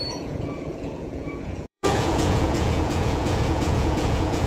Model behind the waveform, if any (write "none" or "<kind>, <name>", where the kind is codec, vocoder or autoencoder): vocoder, Vocos